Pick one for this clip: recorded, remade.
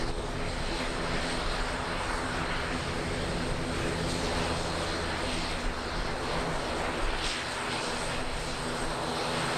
recorded